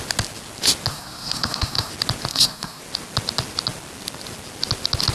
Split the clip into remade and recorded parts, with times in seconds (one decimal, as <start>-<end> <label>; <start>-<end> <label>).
0.0-0.9 recorded; 0.9-1.9 remade; 1.9-2.3 recorded; 2.3-2.8 remade; 2.8-5.1 recorded